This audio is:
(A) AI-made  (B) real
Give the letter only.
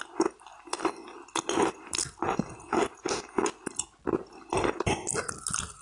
B